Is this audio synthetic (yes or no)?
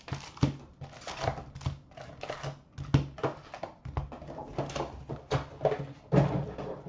no